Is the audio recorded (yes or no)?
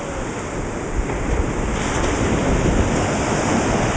yes